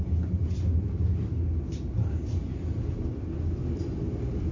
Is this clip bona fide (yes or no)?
yes